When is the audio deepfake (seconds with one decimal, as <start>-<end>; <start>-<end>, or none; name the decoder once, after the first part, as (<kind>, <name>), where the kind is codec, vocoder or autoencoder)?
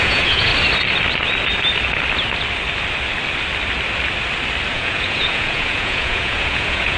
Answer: 0.0-0.5 (vocoder, Vocos); 4.7-7.0